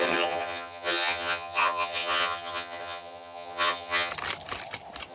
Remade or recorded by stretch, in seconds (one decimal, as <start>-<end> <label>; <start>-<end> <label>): 0.0-4.1 remade; 4.1-5.1 recorded